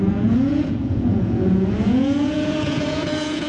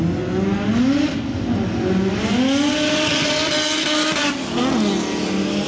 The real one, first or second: second